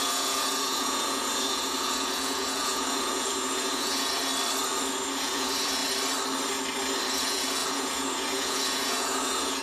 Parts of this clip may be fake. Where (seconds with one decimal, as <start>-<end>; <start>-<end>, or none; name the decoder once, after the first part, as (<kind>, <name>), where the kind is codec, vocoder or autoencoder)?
0.0-4.3 (vocoder, Vocos); 4.9-5.8; 7.1-9.6